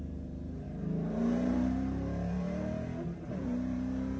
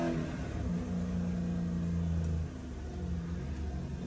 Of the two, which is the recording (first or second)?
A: second